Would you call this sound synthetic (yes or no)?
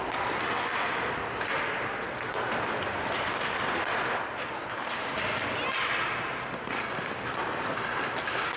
no